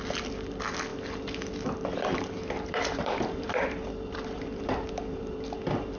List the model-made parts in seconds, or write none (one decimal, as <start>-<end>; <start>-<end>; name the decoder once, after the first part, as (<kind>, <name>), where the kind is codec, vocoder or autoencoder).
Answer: 0.9-1.5 (vocoder, BigVGAN v2); 2.1-6.0

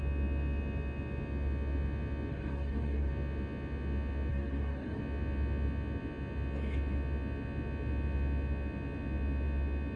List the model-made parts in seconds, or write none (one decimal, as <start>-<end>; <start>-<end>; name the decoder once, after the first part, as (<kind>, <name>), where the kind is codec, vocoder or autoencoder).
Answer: 2.3-3.1 (codec, DAC); 4.3-5.0

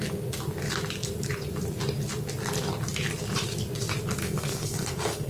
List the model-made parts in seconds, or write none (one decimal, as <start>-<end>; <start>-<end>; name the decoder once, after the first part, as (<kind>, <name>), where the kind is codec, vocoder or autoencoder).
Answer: 4.2-5.3 (codec, SNAC)